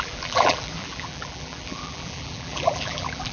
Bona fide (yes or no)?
no